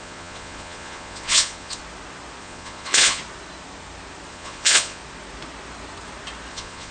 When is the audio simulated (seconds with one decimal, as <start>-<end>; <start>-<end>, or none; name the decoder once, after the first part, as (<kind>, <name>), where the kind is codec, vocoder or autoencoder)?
0.0-1.8 (vocoder, Vocos); 2.4-3.2; 4.3-5.0; 6.5-6.9